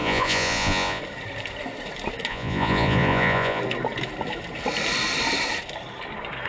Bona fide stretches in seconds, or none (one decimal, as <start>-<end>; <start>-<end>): 1.0-2.3; 3.6-6.5